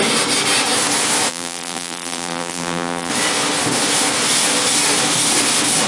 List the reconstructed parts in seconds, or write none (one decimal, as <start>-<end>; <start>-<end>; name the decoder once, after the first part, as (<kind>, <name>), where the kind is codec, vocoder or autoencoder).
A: 1.3-3.1 (vocoder, BigVGAN v2)